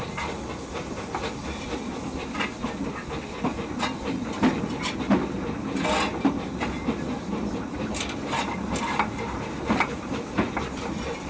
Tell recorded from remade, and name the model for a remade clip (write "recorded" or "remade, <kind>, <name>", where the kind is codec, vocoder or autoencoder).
recorded